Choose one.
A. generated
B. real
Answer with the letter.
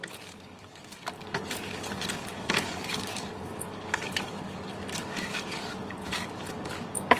A